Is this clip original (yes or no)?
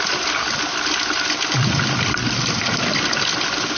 yes